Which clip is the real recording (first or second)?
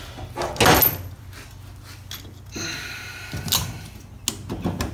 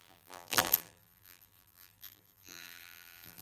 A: first